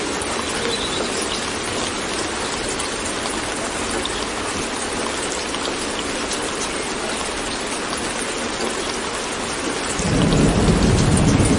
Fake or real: real